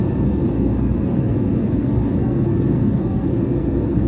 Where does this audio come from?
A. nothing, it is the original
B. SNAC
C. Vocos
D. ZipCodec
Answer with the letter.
B